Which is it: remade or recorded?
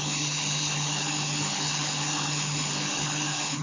remade